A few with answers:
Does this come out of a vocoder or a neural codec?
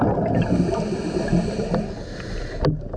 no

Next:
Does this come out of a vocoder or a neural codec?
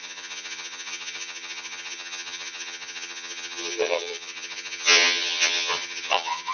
yes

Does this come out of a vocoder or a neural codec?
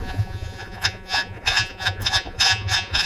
yes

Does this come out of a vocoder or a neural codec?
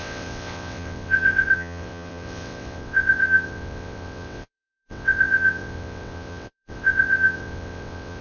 yes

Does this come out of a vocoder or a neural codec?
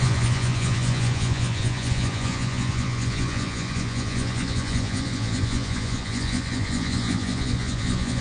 yes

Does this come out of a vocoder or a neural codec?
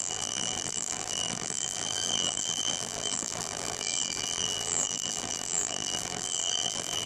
yes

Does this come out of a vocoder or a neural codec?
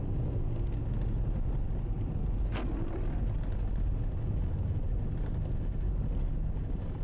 no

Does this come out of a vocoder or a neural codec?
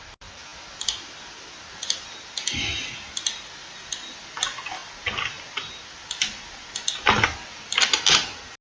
no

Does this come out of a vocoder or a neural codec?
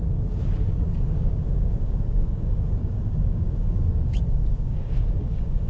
yes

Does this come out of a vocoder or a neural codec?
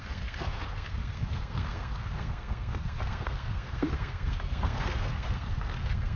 yes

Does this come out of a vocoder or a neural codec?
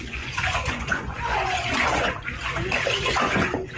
yes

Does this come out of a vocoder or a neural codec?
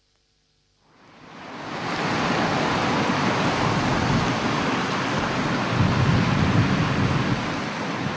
no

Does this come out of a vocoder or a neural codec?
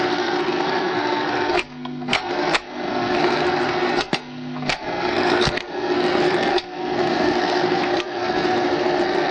yes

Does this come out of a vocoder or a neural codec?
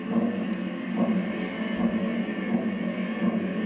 no